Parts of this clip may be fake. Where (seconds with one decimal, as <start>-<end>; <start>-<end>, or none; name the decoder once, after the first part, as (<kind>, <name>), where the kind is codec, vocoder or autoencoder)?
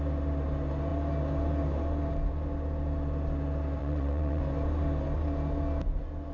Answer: 3.8-4.4 (vocoder, WaveNeXt)